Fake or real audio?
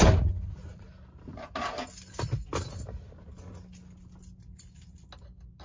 real